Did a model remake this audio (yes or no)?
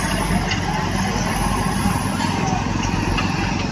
no